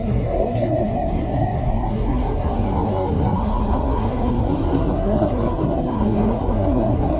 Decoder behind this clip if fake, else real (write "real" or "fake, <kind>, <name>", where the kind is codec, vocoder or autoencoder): fake, codec, SNAC